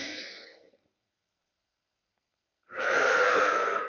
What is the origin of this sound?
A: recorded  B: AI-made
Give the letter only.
B